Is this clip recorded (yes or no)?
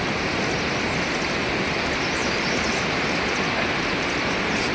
yes